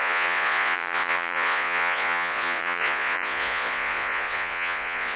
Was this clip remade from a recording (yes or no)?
yes